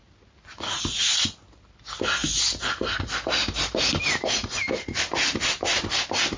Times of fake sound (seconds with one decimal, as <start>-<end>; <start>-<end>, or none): none